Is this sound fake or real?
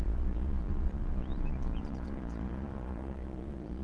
fake